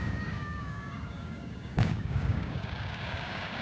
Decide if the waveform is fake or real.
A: fake